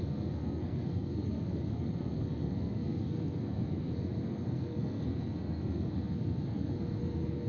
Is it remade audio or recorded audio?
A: remade